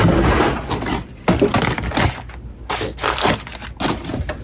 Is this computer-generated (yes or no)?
no